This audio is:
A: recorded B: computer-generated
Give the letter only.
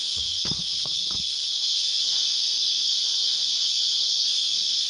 B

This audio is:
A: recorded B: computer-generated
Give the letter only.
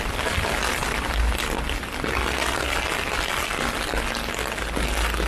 A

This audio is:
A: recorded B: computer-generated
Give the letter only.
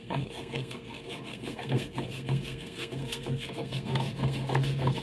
B